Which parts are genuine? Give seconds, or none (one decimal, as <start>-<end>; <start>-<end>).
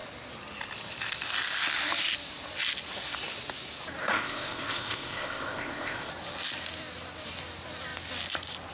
0.0-4.0; 6.1-8.7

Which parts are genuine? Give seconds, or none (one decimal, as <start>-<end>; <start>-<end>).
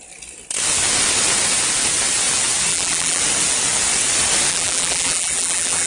0.0-2.7; 3.2-4.5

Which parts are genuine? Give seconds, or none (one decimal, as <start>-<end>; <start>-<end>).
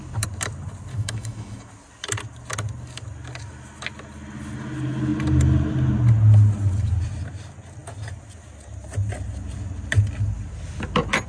0.0-0.9; 1.7-11.3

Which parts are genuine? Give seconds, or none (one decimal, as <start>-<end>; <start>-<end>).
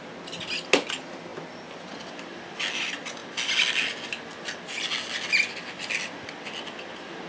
0.0-7.3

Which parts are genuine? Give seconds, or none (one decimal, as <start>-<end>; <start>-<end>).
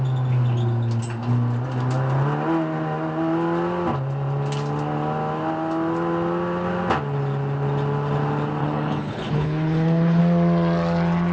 0.0-8.6; 10.2-11.3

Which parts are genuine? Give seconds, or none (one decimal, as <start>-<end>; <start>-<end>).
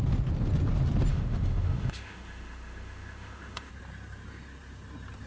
0.0-1.1; 3.7-5.3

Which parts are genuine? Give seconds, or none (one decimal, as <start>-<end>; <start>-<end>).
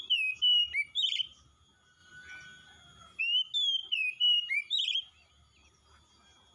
0.0-0.6; 1.2-3.8; 5.3-6.5